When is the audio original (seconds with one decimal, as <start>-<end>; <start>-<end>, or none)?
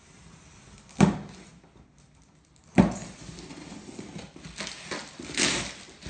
0.0-6.1